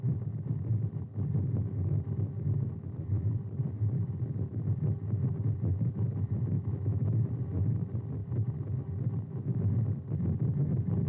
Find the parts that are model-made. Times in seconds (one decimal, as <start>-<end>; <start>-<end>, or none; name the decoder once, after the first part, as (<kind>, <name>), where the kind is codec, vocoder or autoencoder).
none